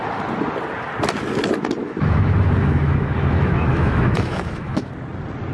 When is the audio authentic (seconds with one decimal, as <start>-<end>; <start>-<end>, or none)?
0.0-1.8; 4.9-5.5